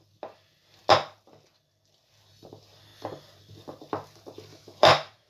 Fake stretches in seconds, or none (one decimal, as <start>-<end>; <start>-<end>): 4.5-5.3